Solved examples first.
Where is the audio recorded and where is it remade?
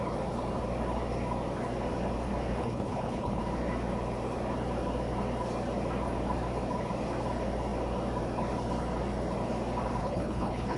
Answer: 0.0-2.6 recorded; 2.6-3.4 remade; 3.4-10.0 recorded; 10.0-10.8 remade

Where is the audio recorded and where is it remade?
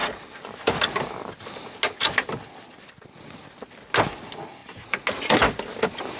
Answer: 0.0-6.2 recorded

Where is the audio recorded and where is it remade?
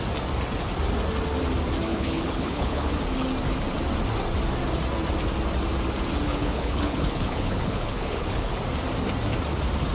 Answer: 0.0-1.9 recorded; 1.9-2.9 remade; 2.9-6.3 recorded; 6.3-8.5 remade; 8.5-9.9 recorded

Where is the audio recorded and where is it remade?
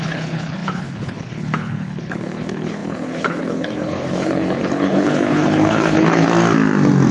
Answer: 0.0-6.3 remade; 6.3-7.1 recorded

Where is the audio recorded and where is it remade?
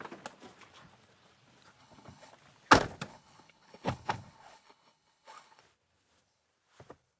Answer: 0.0-1.8 recorded; 1.8-2.3 remade; 2.3-3.1 recorded; 3.1-5.6 remade; 5.6-7.2 recorded